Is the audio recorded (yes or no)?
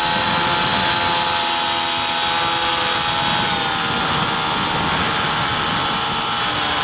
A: yes